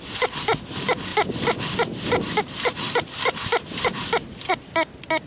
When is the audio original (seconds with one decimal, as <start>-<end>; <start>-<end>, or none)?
0.0-5.3